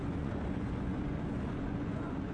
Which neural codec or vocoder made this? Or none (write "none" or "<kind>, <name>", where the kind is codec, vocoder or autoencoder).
vocoder, Vocos